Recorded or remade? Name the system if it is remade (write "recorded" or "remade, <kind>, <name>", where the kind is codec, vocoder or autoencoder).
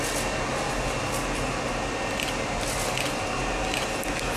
recorded